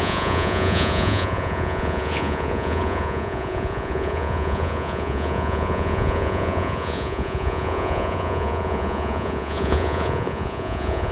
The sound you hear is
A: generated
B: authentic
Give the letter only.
A